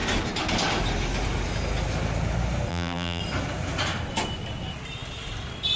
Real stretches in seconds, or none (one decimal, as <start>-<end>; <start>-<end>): 0.0-2.7; 3.2-5.8